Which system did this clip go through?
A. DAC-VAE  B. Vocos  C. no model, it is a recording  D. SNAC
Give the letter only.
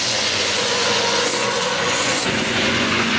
B